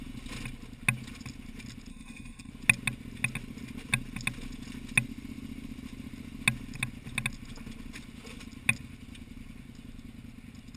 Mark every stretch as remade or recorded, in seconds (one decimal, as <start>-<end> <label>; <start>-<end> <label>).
0.0-1.9 recorded; 1.9-2.5 remade; 2.5-10.8 recorded